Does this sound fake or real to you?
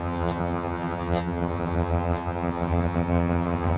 fake